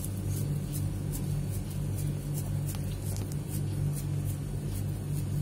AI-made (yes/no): no